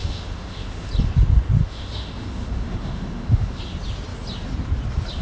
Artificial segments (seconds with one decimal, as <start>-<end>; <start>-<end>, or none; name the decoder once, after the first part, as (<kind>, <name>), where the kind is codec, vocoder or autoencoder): 0.0-0.9 (autoencoder, DAC-VAE); 1.6-3.6